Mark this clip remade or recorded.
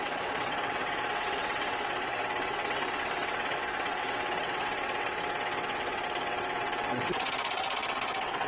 remade